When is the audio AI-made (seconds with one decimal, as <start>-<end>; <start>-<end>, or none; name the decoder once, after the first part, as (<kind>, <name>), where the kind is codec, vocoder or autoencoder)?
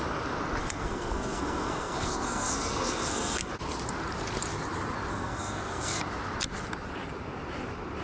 0.6-3.5 (codec, SNAC); 5.1-6.0